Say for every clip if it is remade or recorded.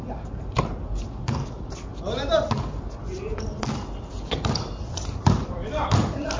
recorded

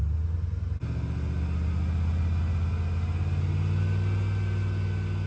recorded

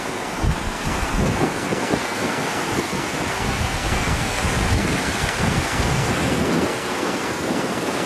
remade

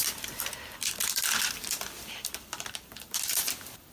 remade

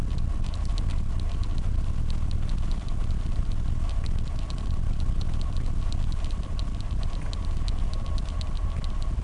recorded